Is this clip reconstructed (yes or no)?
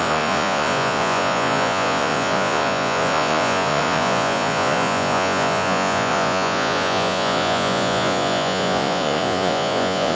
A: yes